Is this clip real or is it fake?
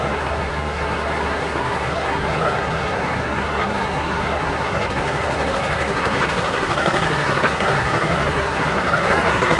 fake